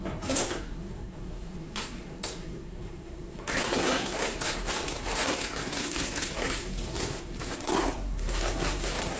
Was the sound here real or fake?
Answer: fake